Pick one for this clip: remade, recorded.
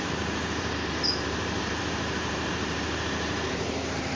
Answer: remade